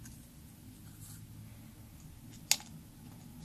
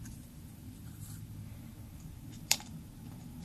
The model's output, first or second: second